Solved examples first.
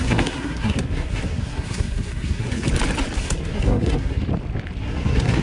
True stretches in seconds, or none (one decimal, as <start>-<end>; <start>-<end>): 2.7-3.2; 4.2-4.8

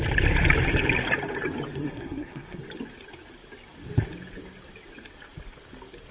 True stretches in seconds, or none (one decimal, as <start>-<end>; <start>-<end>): 0.0-1.8; 2.6-6.1

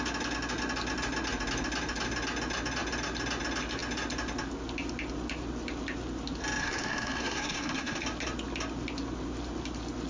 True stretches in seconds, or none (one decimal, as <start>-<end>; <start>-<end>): 0.0-6.6; 8.0-10.1